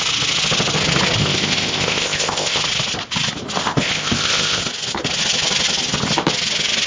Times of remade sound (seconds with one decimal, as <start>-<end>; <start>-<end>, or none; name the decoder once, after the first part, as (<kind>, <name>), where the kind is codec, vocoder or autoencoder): 1.2-2.6 (codec, ZipCodec); 3.6-4.6